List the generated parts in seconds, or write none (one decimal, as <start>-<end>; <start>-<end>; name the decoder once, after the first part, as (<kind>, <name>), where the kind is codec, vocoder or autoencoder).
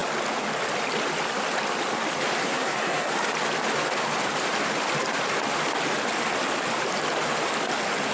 2.4-3.1 (codec, SNAC)